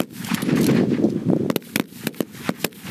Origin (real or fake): real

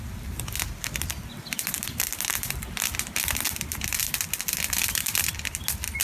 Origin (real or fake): real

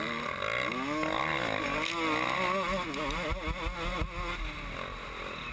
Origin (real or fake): real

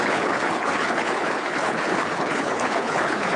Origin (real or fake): fake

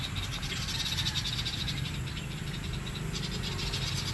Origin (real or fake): real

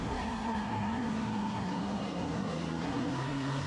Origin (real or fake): fake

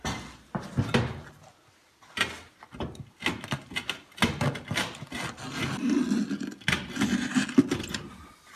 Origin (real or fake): real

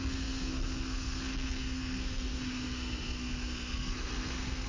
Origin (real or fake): fake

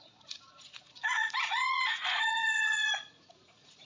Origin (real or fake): fake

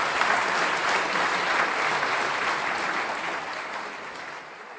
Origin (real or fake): real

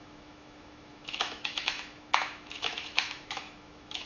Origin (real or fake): fake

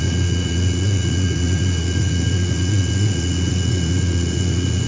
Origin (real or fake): fake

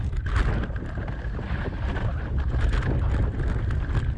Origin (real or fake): real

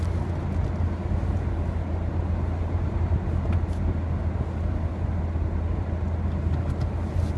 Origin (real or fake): real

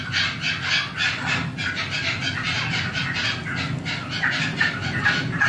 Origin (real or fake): real